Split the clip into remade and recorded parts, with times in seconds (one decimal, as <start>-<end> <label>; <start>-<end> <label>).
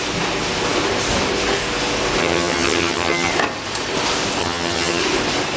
0.0-2.2 recorded; 2.2-3.3 remade; 3.3-4.4 recorded; 4.4-5.0 remade; 5.0-5.6 recorded